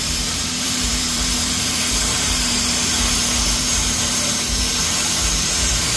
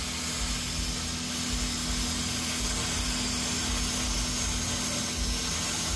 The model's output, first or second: first